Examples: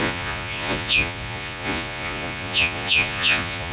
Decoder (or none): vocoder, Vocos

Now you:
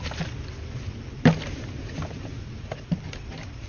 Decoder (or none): none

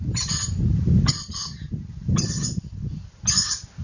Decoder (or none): none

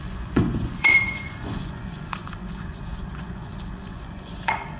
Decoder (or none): vocoder, Vocos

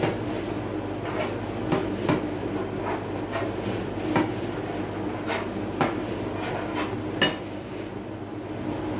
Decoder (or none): none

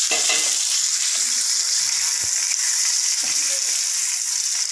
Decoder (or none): none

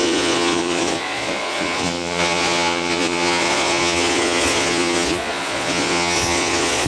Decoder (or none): vocoder, Vocos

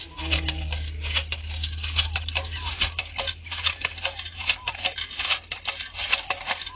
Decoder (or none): none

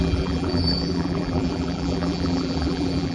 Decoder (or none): vocoder, BigVGAN v2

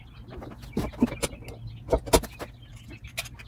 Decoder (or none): none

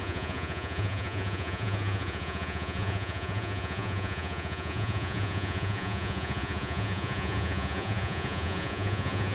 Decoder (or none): vocoder, Vocos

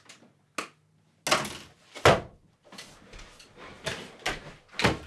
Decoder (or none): none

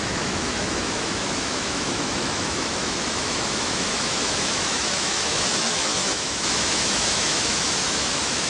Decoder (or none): autoencoder, DAC-VAE